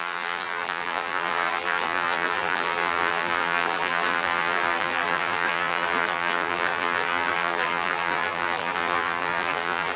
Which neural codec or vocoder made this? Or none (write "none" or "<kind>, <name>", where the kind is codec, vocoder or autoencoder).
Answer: vocoder, BigVGAN v2